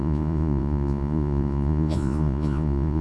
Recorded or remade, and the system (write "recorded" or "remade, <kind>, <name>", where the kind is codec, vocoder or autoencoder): remade, vocoder, Vocos